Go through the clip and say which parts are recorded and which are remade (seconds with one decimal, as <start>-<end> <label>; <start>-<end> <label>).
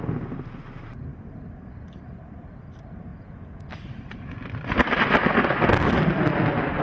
0.0-3.1 recorded; 3.1-3.6 remade; 3.6-6.8 recorded